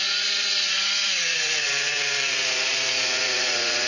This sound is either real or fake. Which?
fake